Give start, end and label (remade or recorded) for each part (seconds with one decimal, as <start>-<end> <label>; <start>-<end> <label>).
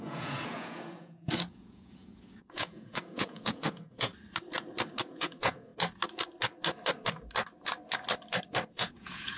0.0-4.1 remade; 4.1-5.1 recorded; 5.1-5.7 remade; 5.7-8.7 recorded; 8.7-9.4 remade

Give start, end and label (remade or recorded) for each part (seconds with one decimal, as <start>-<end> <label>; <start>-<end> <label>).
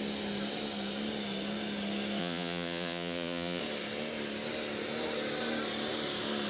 0.0-2.2 recorded; 2.2-3.6 remade; 3.6-6.5 recorded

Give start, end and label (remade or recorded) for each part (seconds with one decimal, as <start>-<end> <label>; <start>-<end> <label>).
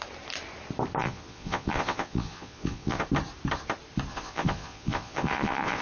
0.0-1.0 recorded; 1.0-3.0 remade; 3.0-4.1 recorded; 4.1-5.8 remade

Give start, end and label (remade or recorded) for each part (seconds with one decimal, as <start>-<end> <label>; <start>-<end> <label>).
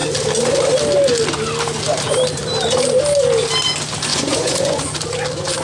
0.0-4.1 recorded; 4.1-4.8 remade; 4.8-5.6 recorded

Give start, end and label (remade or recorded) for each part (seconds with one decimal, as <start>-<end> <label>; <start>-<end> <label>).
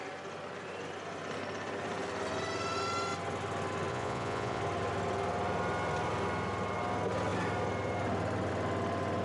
0.0-3.9 recorded; 3.9-4.6 remade; 4.6-9.2 recorded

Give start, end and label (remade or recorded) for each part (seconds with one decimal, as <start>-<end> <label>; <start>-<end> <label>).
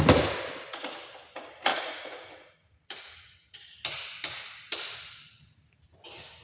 0.0-1.7 recorded; 1.7-3.7 remade; 3.7-6.4 recorded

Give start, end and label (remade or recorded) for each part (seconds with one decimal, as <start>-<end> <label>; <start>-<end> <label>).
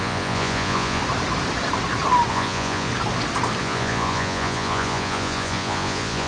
0.0-1.0 remade; 1.0-2.3 recorded; 2.3-2.9 remade; 2.9-3.6 recorded; 3.6-6.3 remade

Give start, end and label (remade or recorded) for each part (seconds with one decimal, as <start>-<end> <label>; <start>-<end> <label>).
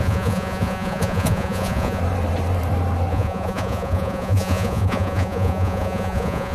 0.0-2.0 remade; 2.0-3.1 recorded; 3.1-6.5 remade